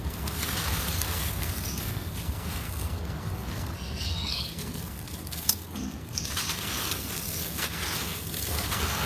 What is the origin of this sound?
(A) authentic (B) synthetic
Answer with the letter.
B